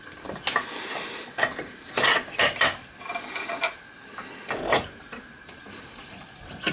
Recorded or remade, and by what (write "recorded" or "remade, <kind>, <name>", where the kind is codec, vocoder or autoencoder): recorded